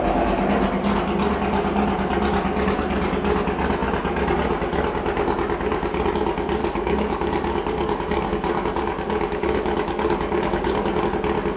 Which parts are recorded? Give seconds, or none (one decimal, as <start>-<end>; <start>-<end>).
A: 0.0-6.6; 11.0-11.6